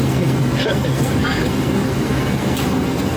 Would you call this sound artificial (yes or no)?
yes